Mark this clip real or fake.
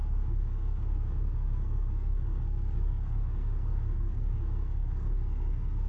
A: fake